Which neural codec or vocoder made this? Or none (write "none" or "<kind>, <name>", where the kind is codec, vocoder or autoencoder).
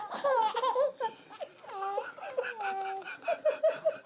none